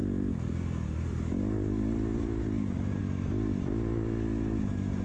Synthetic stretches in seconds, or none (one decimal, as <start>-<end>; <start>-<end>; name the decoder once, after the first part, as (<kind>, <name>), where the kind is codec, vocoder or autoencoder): none